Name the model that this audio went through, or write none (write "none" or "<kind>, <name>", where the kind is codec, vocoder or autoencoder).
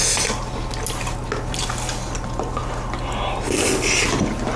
none